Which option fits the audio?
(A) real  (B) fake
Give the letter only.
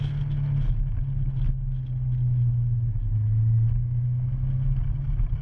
A